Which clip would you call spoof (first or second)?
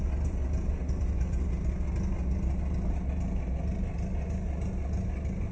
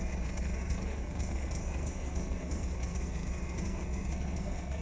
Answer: second